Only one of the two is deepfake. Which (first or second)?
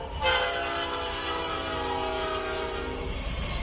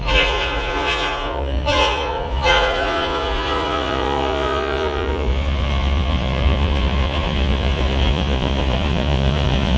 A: second